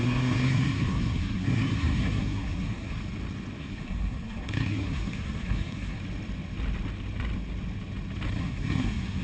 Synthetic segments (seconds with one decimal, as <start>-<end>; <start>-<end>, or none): 0.0-3.0; 3.6-6.0; 8.4-9.2